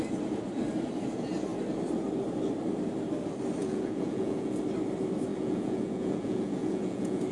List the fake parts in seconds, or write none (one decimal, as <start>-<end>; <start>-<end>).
3.6-4.6; 5.3-7.3